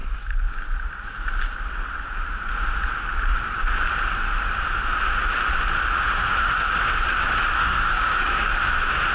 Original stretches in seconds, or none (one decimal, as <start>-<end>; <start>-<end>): 0.0-7.6; 8.5-9.1